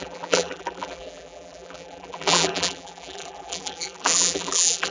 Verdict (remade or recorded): remade